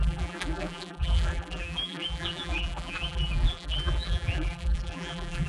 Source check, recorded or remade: remade